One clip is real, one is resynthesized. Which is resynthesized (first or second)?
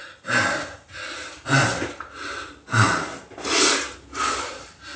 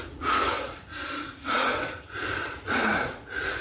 second